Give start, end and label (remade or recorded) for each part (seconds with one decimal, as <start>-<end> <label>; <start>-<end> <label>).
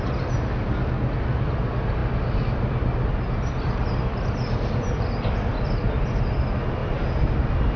0.0-7.8 recorded